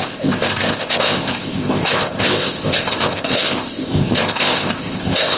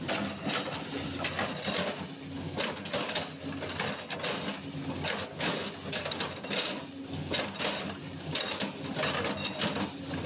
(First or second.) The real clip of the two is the second